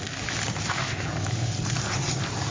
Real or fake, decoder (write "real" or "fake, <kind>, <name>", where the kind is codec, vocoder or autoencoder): real